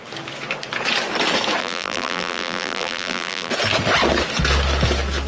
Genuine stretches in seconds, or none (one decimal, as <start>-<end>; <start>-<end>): 0.0-1.6; 3.5-5.3